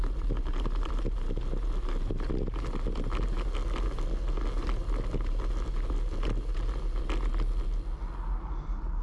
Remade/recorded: recorded